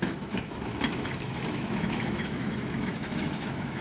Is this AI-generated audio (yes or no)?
yes